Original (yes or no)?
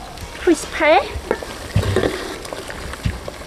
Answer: yes